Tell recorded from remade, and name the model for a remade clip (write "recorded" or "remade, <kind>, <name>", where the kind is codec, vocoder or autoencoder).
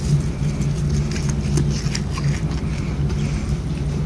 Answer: recorded